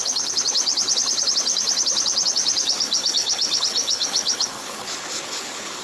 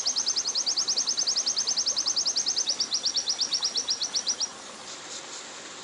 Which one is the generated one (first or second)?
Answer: first